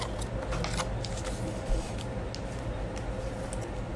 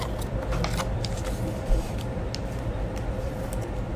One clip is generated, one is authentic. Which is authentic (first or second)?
first